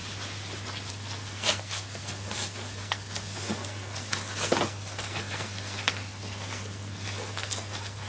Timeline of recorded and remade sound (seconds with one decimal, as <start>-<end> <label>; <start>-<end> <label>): 0.0-0.9 recorded; 0.9-8.1 remade